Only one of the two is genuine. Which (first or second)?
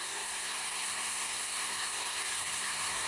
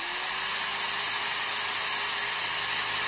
second